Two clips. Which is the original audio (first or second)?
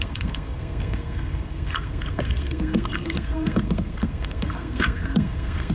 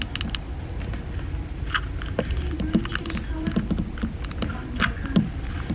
second